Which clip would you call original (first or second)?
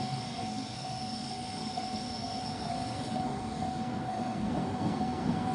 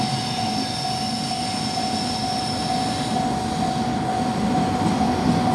second